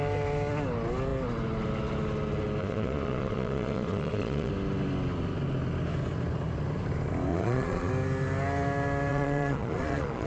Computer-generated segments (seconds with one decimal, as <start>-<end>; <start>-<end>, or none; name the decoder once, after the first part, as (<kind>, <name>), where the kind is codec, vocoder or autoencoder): 2.6-4.5 (vocoder, Vocos); 7.3-7.9; 9.1-10.3